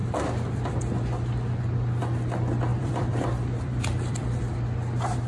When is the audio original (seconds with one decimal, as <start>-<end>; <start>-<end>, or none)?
0.8-2.7; 4.4-5.3